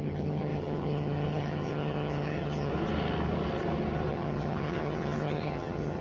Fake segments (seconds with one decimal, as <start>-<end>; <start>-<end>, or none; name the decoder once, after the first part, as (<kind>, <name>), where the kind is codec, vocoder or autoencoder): 0.0-2.7 (vocoder, HiFi-GAN); 4.1-6.0